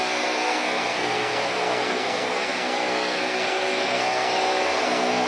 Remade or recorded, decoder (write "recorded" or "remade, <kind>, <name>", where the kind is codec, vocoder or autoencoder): remade, codec, SNAC